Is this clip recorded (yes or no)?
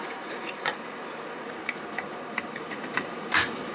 no